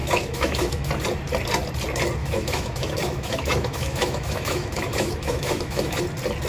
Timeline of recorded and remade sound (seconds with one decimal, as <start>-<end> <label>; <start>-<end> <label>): 0.0-0.9 remade; 0.9-2.2 recorded; 2.2-6.0 remade; 6.0-6.5 recorded